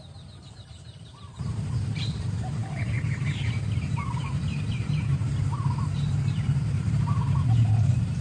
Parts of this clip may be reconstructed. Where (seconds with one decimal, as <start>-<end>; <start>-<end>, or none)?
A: 0.0-8.2